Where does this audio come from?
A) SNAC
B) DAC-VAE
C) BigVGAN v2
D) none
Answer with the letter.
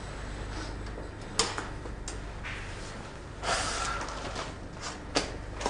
D